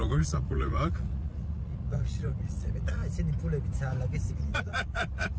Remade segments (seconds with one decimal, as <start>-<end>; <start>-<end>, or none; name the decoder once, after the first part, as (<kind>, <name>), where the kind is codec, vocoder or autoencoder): 0.0-3.0 (vocoder, Vocos); 4.3-5.4